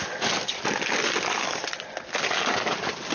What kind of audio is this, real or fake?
real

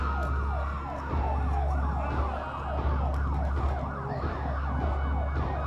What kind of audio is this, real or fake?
real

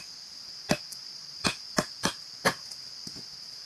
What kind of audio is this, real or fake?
real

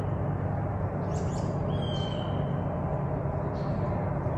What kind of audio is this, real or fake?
real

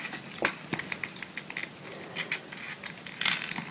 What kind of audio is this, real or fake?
real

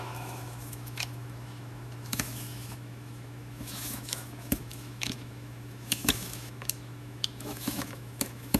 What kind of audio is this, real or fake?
fake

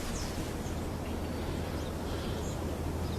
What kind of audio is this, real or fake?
real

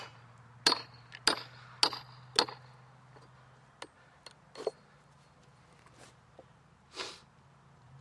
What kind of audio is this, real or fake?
real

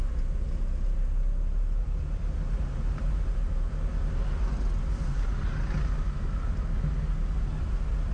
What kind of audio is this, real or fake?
real